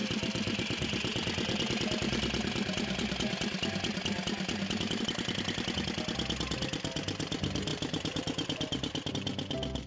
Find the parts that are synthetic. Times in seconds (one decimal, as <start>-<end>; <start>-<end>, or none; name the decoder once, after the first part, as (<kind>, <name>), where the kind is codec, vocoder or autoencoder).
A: 7.7-9.1 (vocoder, BigVGAN v2)